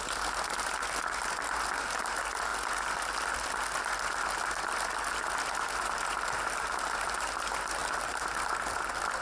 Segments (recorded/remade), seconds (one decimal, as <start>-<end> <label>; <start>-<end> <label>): 0.0-9.2 recorded

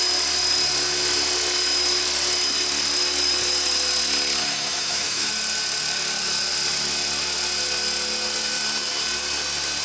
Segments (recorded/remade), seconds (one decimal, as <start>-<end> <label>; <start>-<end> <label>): 0.0-4.4 recorded; 4.4-5.3 remade; 5.3-9.8 recorded